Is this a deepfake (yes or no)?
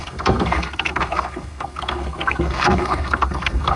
yes